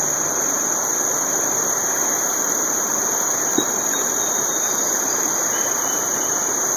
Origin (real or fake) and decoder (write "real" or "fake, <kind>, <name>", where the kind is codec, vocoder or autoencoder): real